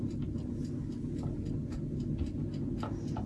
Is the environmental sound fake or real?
real